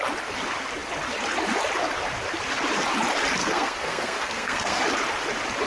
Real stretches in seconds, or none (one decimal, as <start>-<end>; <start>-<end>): 0.0-3.4; 4.8-5.7